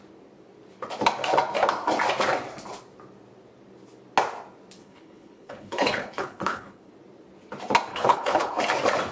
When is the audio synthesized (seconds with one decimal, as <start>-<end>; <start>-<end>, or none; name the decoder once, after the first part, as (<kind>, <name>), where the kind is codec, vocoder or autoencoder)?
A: 4.8-6.9 (codec, HILCodec); 7.9-8.6